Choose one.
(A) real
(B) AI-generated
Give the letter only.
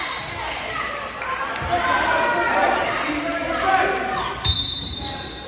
A